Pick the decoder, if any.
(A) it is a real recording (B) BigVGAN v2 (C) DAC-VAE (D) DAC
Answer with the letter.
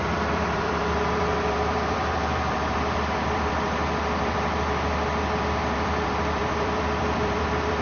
B